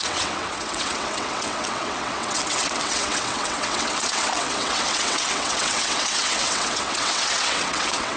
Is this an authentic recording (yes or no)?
no